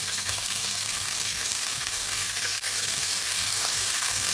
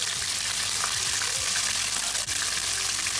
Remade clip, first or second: first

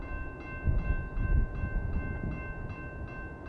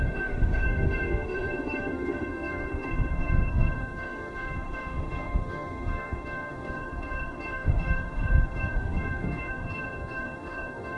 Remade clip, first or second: second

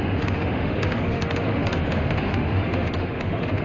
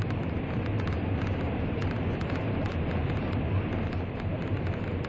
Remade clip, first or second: first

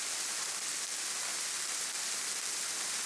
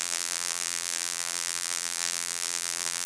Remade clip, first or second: second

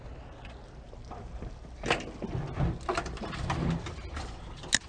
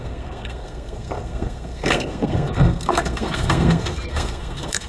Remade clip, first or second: second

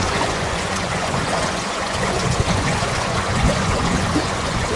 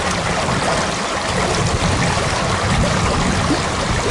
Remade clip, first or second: first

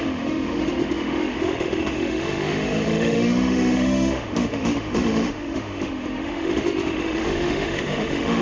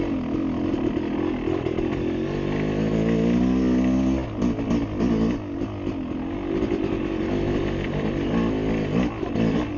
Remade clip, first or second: first